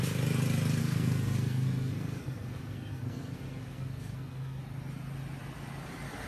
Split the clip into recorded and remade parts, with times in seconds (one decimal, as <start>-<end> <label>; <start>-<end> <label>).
0.0-0.8 recorded; 0.8-4.6 remade; 4.6-6.3 recorded